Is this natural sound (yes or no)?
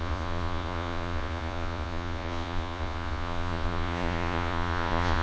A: no